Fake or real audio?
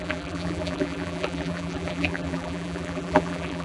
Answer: fake